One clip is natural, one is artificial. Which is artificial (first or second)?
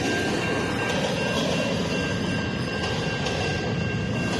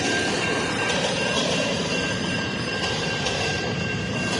second